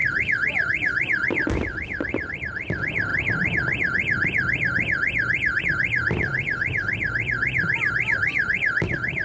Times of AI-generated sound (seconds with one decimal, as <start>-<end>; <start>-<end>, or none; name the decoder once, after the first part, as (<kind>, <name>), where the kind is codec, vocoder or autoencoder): 0.0-9.2 (vocoder, BigVGAN v2)